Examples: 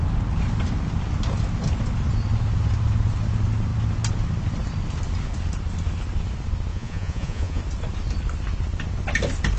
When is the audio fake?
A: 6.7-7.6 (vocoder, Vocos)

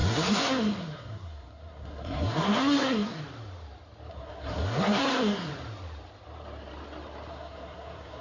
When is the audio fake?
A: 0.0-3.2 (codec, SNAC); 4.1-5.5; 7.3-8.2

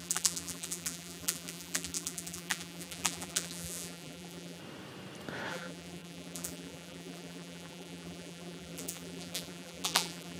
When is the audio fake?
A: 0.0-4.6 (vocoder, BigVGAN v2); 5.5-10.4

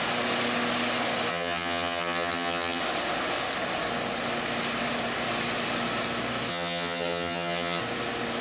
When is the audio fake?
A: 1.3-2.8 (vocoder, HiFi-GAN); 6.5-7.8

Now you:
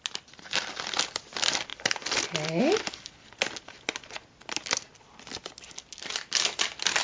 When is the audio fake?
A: 1.7-2.6 (vocoder, BigVGAN v2)